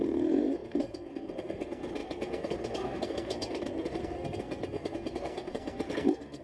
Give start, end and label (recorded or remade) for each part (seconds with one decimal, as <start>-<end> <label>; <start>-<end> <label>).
0.0-6.4 remade